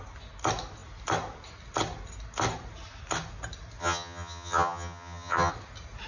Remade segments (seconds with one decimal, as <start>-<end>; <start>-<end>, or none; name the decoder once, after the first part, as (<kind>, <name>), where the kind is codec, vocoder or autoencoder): 3.8-5.5 (vocoder, HiFi-GAN)